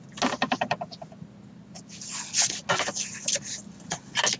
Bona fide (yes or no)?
yes